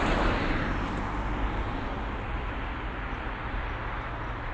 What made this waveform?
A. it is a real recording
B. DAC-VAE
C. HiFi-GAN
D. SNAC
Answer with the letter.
A